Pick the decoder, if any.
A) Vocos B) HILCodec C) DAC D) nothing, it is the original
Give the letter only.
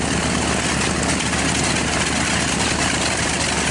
D